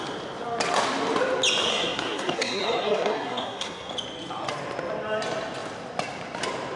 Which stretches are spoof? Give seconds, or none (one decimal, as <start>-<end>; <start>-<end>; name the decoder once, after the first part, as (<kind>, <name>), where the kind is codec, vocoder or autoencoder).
1.7-3.9 (codec, SNAC)